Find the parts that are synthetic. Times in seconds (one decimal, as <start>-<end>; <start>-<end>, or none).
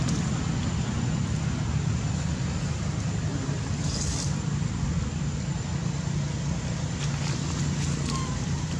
none